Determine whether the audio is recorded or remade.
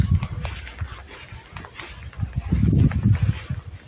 recorded